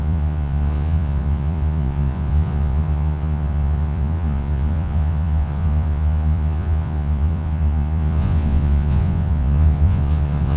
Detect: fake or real fake